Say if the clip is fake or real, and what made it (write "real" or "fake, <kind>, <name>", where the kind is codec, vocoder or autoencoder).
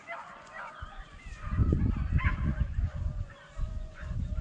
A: fake, vocoder, Vocos